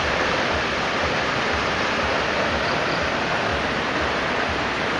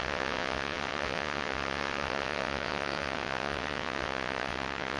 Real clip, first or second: first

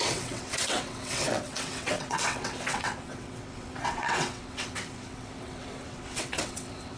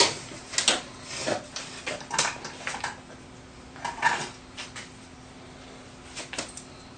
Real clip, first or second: second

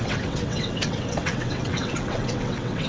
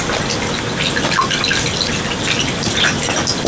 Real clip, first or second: second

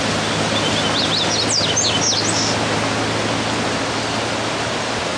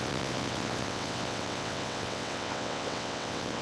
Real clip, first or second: first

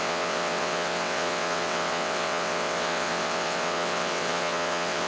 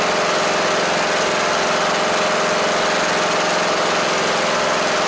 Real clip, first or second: second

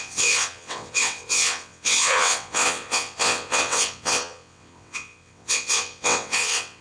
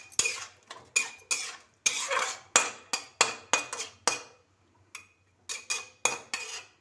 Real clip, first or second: second